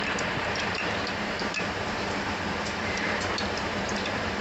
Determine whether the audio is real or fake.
fake